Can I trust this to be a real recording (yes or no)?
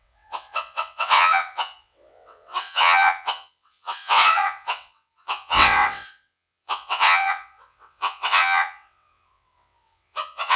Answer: no